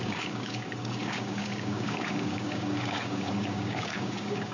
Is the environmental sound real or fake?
fake